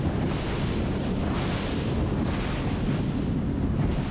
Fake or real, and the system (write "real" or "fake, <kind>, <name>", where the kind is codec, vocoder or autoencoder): real